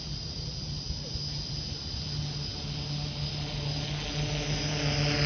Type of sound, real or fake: real